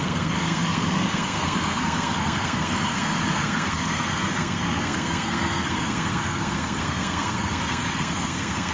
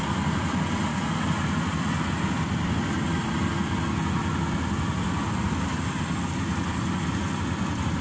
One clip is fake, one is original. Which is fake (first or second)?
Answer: first